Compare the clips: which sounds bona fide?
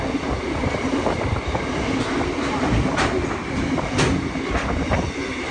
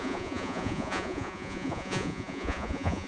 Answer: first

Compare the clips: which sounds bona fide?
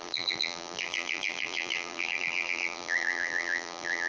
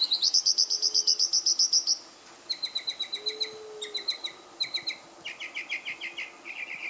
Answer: second